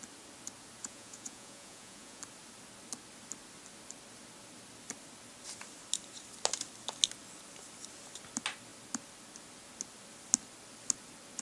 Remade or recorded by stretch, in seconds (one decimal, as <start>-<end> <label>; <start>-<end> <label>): 0.0-0.8 recorded; 0.8-2.2 remade; 2.2-11.4 recorded